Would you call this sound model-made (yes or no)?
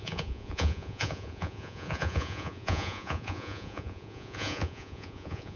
yes